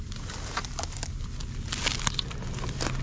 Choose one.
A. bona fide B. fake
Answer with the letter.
A